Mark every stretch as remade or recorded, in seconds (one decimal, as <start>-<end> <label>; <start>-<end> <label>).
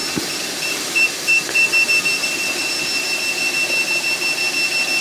0.0-2.6 remade; 2.6-5.0 recorded